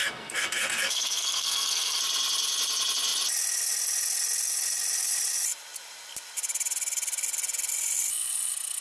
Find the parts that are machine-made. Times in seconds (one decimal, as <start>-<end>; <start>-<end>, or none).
0.0-2.0